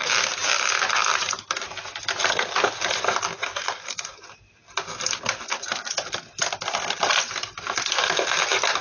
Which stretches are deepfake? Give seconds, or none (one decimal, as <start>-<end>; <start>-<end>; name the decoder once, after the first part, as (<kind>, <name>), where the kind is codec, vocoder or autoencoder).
none